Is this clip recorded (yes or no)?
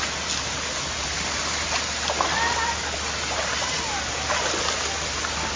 yes